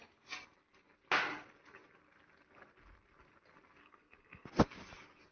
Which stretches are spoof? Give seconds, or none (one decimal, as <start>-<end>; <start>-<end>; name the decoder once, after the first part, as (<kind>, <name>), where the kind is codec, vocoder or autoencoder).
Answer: 3.8-4.5 (codec, SNAC)